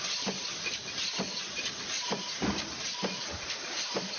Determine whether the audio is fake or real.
real